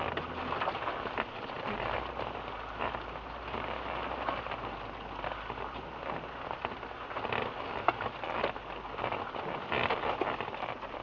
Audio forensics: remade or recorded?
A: recorded